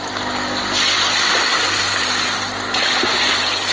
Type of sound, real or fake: real